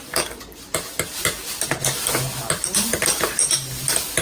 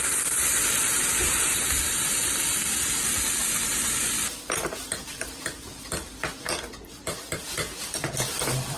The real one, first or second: first